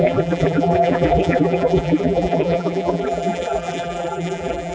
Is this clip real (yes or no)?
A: no